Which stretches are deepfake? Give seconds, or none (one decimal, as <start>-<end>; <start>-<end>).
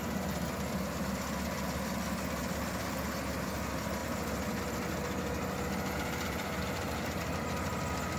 2.4-2.9